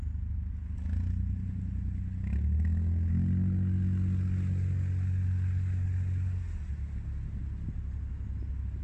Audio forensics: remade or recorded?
recorded